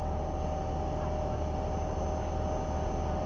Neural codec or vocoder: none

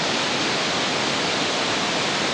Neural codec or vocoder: none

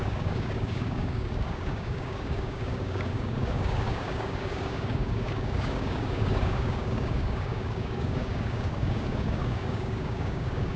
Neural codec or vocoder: codec, DAC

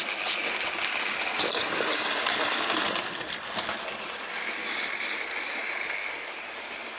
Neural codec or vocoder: none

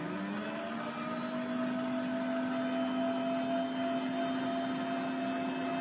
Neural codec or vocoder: none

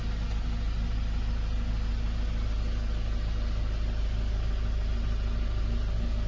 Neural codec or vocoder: none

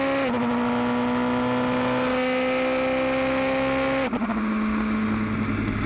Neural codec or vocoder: none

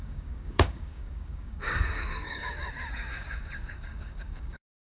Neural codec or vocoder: codec, DAC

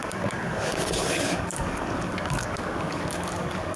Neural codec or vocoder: codec, DAC